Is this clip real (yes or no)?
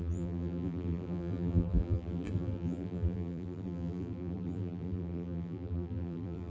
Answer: no